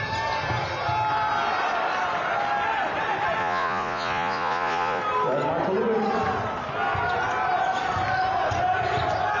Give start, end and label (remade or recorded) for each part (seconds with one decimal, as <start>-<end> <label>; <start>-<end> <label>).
0.0-3.4 recorded; 3.4-5.0 remade; 5.0-9.4 recorded